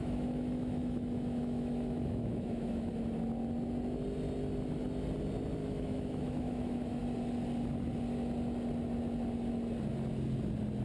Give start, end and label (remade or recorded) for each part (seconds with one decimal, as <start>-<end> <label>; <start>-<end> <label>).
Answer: 0.0-2.9 remade; 2.9-5.6 recorded; 5.6-7.0 remade; 7.0-10.8 recorded

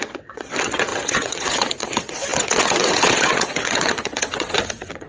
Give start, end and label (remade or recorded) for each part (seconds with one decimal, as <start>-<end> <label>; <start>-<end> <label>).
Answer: 0.0-5.1 remade

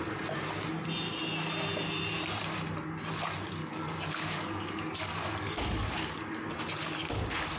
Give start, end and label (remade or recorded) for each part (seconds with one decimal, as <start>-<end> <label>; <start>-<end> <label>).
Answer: 0.0-3.6 recorded; 3.6-5.9 remade; 5.9-7.6 recorded

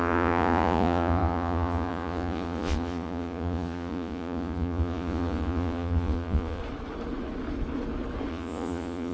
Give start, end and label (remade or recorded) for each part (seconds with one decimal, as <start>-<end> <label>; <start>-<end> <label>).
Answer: 0.0-6.6 remade; 6.6-8.3 recorded; 8.3-9.1 remade

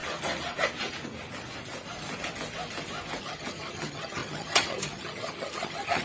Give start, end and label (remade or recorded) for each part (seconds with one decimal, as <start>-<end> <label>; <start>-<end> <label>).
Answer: 0.0-3.2 recorded; 3.2-6.0 remade

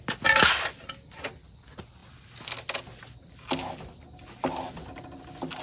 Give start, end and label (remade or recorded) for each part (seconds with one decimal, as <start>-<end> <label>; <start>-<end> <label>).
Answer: 0.0-5.6 recorded